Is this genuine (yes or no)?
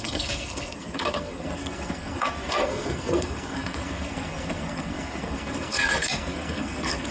no